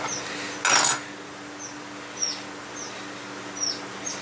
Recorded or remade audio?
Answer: recorded